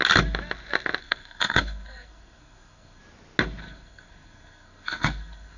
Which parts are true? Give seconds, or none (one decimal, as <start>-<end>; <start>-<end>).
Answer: 0.0-1.0; 3.0-3.6